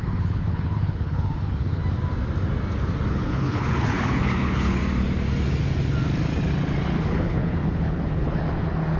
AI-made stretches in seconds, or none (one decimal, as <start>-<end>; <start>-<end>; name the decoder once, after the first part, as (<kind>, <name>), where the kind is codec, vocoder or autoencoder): 0.0-1.8 (codec, HILCodec); 3.1-4.8; 6.8-9.0

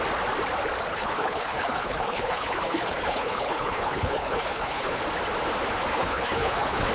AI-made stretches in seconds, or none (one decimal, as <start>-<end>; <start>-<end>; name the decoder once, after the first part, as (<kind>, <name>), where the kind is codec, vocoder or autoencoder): 0.9-5.0 (codec, HILCodec); 5.9-6.9

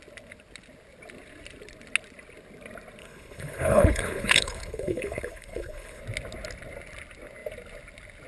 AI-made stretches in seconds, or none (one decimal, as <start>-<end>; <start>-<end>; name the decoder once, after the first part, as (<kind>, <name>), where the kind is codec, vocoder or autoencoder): 3.0-6.0 (codec, HILCodec)